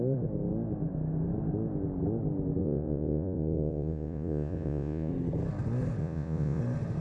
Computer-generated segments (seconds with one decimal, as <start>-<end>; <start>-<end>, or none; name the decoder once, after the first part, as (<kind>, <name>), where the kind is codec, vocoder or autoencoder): 2.6-5.1 (vocoder, Vocos); 6.0-6.6